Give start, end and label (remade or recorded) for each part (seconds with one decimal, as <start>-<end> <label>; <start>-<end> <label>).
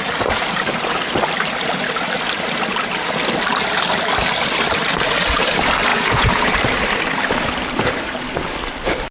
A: 0.0-5.9 recorded; 5.9-6.5 remade; 6.5-9.1 recorded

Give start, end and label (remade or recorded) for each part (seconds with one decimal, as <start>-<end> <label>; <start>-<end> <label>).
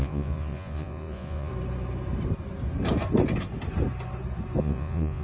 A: 0.0-1.5 remade; 1.5-4.6 recorded; 4.6-5.2 remade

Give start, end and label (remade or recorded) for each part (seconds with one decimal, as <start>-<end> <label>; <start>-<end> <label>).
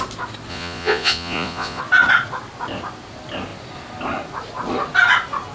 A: 0.0-0.5 recorded; 0.5-1.8 remade; 1.8-5.5 recorded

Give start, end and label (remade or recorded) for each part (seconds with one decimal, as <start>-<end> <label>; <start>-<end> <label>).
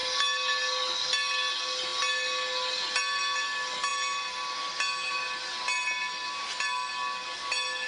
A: 0.0-7.9 recorded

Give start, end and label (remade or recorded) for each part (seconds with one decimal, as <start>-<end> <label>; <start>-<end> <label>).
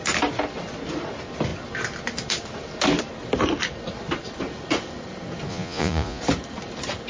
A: 0.0-5.5 recorded; 5.5-6.2 remade; 6.2-7.1 recorded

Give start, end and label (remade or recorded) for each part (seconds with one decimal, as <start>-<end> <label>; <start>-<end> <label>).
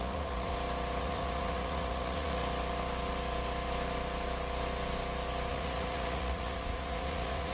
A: 0.0-0.5 remade; 0.5-1.0 recorded; 1.0-2.4 remade; 2.4-5.5 recorded; 5.5-7.5 remade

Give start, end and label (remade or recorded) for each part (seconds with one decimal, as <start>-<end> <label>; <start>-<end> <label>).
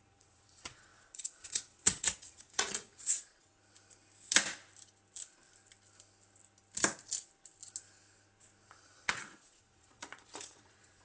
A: 0.0-3.5 remade; 3.5-8.7 recorded; 8.7-11.0 remade